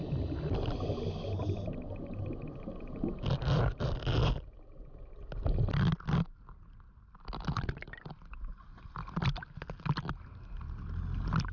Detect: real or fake real